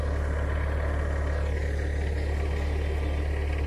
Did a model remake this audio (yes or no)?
no